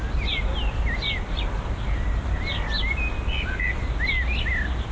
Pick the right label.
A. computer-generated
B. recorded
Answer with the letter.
B